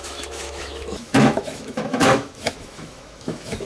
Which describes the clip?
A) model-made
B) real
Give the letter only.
A